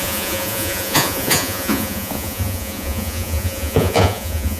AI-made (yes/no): yes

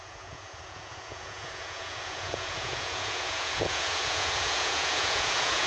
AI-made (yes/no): yes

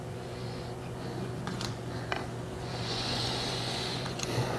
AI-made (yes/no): yes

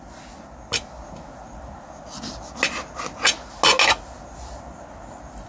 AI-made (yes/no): no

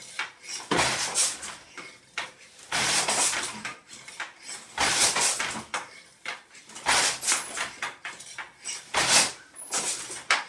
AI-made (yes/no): no